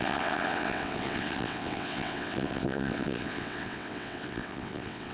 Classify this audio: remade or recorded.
remade